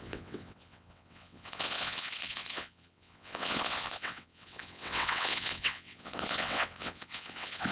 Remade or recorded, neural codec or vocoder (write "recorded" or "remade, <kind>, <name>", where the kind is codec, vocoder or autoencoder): remade, vocoder, WaveNeXt